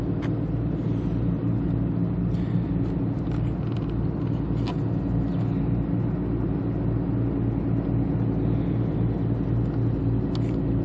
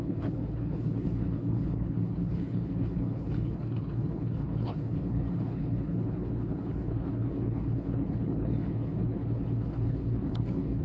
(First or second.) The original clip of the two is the first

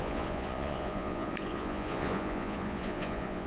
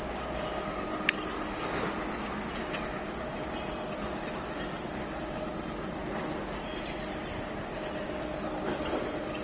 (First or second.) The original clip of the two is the second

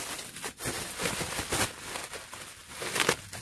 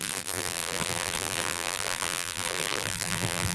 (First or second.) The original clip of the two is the first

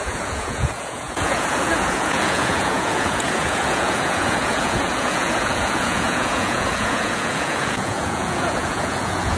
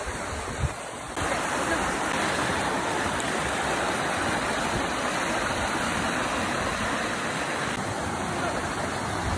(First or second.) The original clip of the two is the second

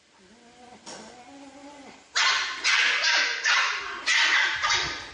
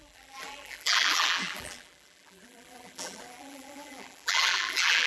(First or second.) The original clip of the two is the first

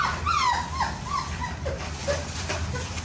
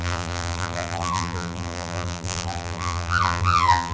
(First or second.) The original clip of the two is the first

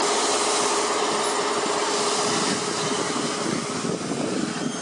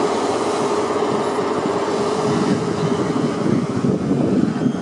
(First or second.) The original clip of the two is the first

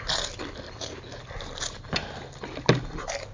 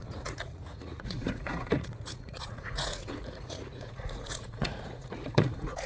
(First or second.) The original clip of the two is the first